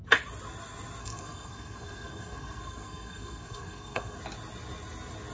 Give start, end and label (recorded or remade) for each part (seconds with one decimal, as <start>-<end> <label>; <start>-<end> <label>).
0.0-1.0 recorded; 1.0-4.2 remade; 4.2-5.3 recorded

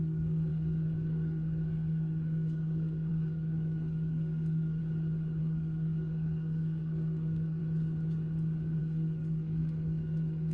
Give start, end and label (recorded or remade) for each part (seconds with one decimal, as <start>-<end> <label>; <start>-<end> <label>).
0.0-4.8 remade; 4.8-5.4 recorded; 5.4-7.6 remade; 7.6-8.8 recorded; 8.8-10.5 remade

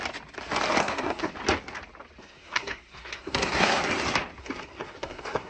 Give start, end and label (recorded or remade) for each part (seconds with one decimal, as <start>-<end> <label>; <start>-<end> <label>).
0.0-0.8 recorded; 0.8-1.3 remade; 1.3-2.2 recorded; 2.2-3.8 remade; 3.8-4.4 recorded; 4.4-5.5 remade

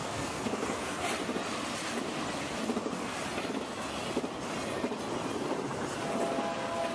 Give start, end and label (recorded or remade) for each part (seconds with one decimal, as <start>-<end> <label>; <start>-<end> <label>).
0.0-0.9 remade; 0.9-6.9 recorded

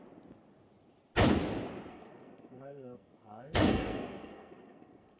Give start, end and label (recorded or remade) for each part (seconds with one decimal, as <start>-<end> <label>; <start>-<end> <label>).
0.0-1.9 recorded; 1.9-5.2 remade

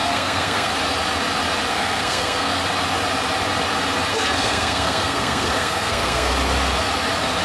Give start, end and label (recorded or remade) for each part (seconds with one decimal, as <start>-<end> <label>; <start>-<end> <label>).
0.0-0.7 remade; 0.7-1.7 recorded; 1.7-2.6 remade; 2.6-4.1 recorded; 4.1-6.3 remade; 6.3-7.4 recorded

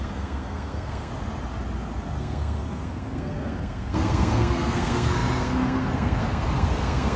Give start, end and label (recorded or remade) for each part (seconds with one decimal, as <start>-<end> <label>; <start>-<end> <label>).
0.0-1.1 remade; 1.1-2.2 recorded; 2.2-7.2 remade

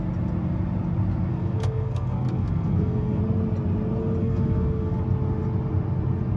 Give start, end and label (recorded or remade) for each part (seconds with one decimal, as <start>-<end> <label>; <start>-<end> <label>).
0.0-1.3 recorded; 1.3-3.2 remade; 3.2-4.2 recorded; 4.2-5.0 remade; 5.0-6.4 recorded